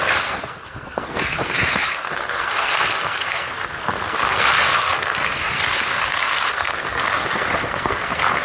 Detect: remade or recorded remade